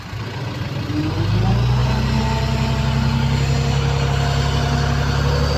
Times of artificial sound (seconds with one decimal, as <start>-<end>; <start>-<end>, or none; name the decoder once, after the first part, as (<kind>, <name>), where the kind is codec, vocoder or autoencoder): none